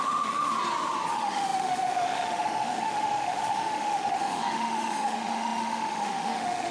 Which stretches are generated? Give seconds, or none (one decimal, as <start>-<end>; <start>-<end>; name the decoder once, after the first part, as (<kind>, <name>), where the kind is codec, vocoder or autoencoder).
0.0-0.5 (autoencoder, DAC-VAE); 1.1-6.7